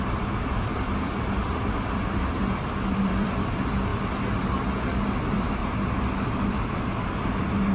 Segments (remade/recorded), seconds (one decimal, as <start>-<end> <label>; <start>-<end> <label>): 0.0-3.9 remade; 3.9-4.9 recorded; 4.9-5.6 remade; 5.6-6.3 recorded; 6.3-7.7 remade